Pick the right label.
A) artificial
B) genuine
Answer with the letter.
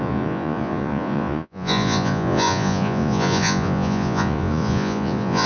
A